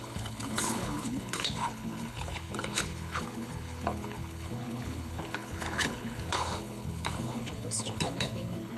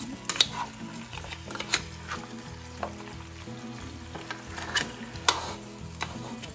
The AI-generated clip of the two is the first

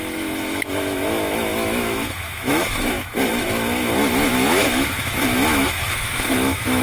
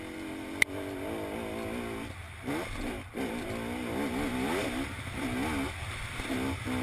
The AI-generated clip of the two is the first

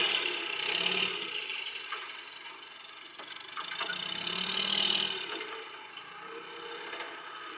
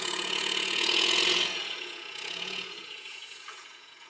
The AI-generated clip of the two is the second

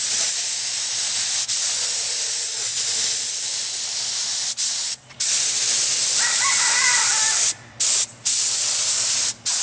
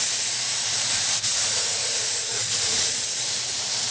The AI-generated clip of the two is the second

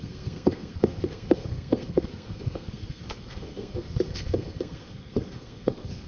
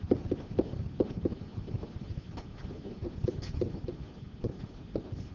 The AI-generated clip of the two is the first